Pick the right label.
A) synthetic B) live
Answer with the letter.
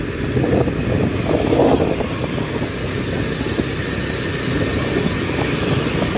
B